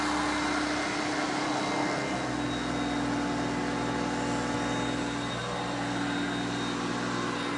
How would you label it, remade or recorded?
recorded